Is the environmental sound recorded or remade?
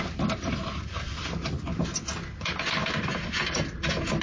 recorded